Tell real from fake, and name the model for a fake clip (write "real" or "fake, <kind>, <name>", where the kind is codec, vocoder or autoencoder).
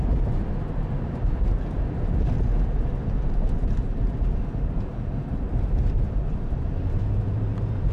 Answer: fake, vocoder, BigVGAN v2